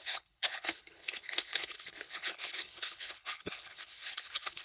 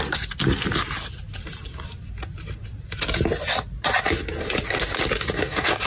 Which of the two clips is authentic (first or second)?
second